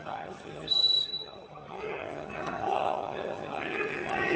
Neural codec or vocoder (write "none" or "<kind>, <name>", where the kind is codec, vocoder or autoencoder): vocoder, HiFi-GAN